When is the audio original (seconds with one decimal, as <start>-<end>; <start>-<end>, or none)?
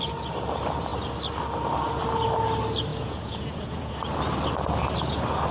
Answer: 0.0-2.9; 3.9-5.5